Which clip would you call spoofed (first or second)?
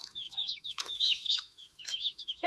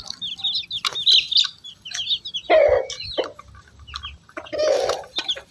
first